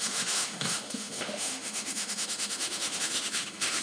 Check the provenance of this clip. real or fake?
fake